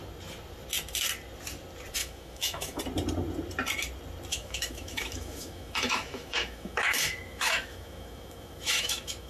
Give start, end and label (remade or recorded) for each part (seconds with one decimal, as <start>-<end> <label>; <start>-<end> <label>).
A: 0.0-2.0 recorded; 2.0-2.8 remade; 2.8-4.3 recorded; 4.3-9.3 remade